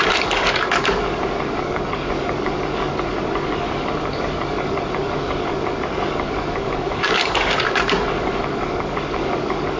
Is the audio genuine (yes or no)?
no